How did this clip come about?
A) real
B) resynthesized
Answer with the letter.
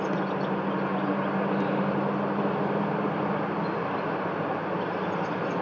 A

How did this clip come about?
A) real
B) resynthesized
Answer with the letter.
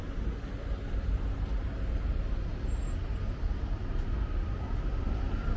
A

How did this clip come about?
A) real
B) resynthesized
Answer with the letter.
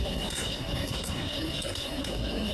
B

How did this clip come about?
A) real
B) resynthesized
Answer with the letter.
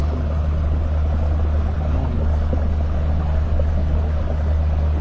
A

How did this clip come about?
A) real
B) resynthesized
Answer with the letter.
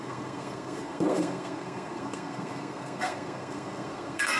B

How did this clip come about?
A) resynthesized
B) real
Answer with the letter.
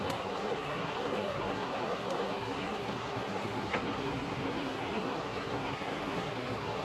A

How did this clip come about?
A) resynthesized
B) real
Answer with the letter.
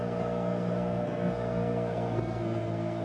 A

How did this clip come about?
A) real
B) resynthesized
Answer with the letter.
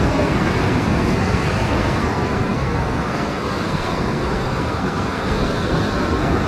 B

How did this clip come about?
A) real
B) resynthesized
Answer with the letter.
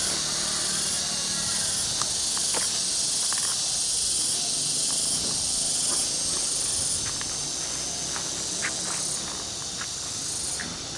A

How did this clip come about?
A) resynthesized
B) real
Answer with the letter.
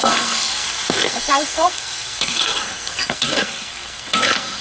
A